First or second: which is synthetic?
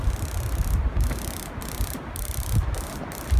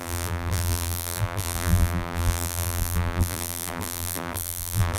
second